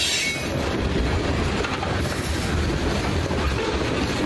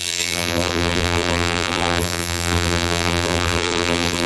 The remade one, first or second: second